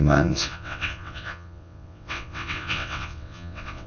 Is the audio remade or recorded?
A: remade